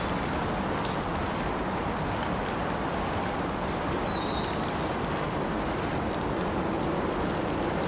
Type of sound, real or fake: real